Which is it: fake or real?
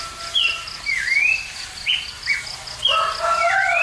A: real